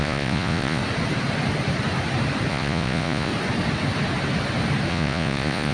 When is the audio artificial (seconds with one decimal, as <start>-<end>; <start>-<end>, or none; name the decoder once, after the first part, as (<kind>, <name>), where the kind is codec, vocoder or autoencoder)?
0.0-0.8 (vocoder, Vocos); 2.5-3.3; 4.9-5.7